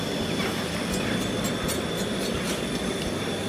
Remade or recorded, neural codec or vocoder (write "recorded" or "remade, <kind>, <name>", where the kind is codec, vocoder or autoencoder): recorded